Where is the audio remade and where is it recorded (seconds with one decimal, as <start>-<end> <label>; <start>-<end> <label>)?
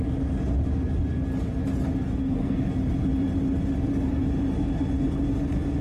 0.0-2.2 recorded; 2.2-2.7 remade; 2.7-5.8 recorded